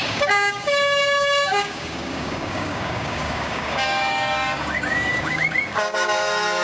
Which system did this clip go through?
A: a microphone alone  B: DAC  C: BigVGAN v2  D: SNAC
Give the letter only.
B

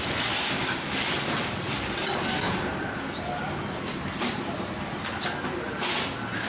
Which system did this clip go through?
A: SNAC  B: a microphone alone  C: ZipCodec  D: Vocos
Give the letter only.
B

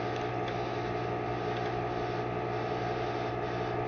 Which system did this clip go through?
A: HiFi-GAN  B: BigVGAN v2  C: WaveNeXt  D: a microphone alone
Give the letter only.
D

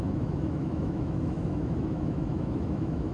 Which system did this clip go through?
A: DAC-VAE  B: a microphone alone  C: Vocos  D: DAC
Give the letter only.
A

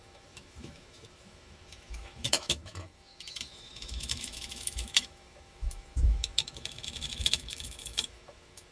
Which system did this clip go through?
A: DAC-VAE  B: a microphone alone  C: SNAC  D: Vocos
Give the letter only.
A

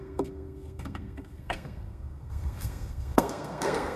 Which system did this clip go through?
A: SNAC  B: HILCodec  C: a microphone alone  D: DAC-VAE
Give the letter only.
A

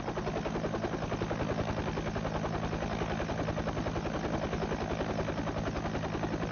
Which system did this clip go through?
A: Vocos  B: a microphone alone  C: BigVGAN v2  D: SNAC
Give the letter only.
B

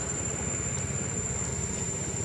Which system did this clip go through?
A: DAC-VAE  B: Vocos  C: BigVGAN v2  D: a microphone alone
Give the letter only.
D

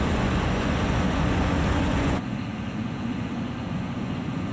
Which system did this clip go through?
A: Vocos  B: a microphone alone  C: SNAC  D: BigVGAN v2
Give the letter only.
A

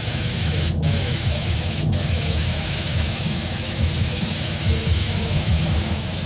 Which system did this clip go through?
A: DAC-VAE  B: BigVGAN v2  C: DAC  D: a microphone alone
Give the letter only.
A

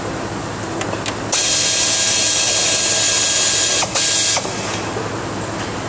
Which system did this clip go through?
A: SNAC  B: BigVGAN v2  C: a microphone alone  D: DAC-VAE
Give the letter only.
C